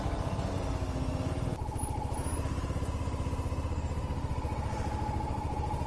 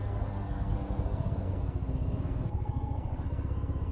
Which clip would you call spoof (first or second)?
second